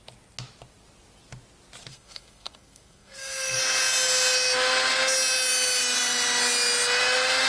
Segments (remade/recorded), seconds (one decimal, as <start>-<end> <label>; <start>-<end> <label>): 0.0-1.9 recorded; 1.9-3.6 remade; 3.6-7.5 recorded